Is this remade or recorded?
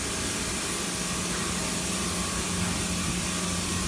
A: recorded